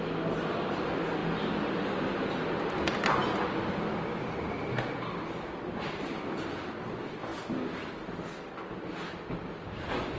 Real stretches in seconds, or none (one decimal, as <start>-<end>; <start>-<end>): 0.0-10.2